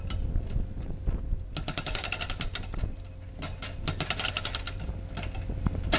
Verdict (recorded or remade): recorded